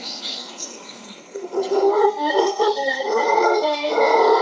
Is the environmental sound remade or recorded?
remade